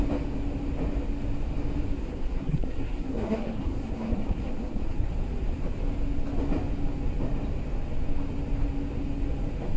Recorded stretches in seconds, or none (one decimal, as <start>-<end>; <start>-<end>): 0.0-2.0; 5.1-9.8